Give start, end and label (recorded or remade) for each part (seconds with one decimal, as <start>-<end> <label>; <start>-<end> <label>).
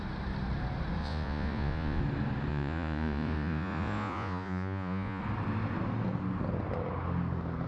0.0-1.0 recorded; 1.0-2.0 remade; 2.0-2.5 recorded; 2.5-5.2 remade; 5.2-7.7 recorded